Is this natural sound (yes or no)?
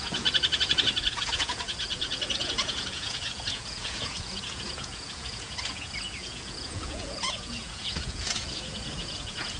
no